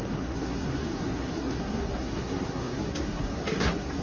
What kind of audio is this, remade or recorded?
remade